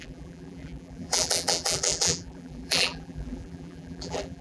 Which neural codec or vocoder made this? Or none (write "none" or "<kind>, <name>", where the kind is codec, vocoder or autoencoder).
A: vocoder, BigVGAN v2